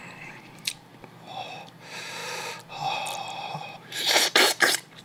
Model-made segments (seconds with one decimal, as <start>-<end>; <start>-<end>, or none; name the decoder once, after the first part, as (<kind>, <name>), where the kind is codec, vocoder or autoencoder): 0.0-0.9 (vocoder, BigVGAN v2); 1.4-2.2; 3.3-5.0